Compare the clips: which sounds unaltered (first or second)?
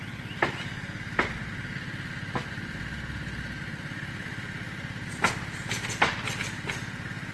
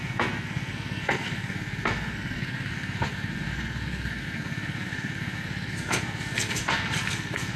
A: first